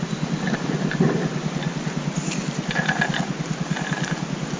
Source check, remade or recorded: recorded